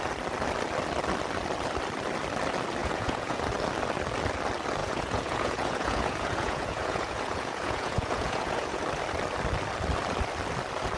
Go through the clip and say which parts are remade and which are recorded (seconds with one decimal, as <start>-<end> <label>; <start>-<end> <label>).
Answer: 0.0-2.8 recorded; 2.8-3.4 remade; 3.4-4.8 recorded; 4.8-8.8 remade; 8.8-11.0 recorded

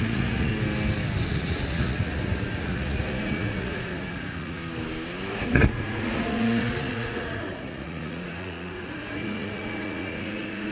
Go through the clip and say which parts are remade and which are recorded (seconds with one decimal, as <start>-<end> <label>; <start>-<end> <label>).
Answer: 0.0-0.5 remade; 0.5-1.3 recorded; 1.3-4.6 remade; 4.6-5.3 recorded; 5.3-10.7 remade